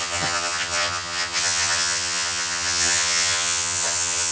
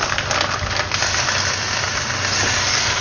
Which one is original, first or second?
second